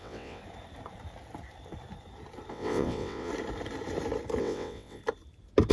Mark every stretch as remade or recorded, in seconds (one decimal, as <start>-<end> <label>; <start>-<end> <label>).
0.0-0.4 remade; 0.4-2.5 recorded; 2.5-3.3 remade; 3.3-4.4 recorded; 4.4-5.0 remade; 5.0-5.7 recorded